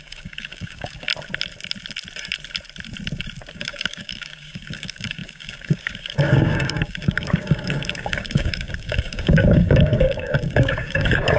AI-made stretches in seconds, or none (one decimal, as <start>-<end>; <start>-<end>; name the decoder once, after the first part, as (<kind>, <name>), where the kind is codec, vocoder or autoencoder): 0.0-1.1 (codec, DAC); 3.5-11.4